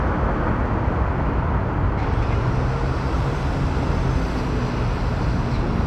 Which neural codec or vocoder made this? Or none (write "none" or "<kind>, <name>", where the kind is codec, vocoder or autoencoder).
none